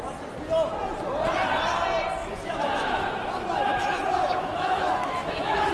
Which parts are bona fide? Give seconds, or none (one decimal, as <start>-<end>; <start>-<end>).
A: 0.0-2.2